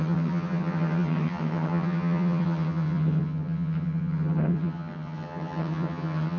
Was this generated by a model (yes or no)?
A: yes